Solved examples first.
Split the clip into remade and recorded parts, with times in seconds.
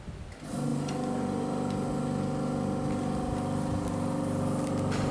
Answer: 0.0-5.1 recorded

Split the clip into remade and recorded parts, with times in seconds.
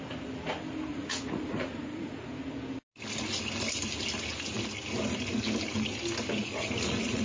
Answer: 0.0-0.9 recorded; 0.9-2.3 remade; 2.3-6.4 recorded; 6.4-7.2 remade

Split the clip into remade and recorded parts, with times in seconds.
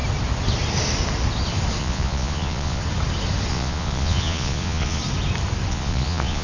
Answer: 0.0-1.8 recorded; 1.8-2.8 remade; 2.8-3.5 recorded; 3.5-5.0 remade; 5.0-5.7 recorded; 5.7-6.4 remade